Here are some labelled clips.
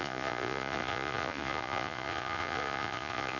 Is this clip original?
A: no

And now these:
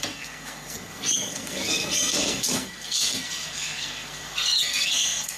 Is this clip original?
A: no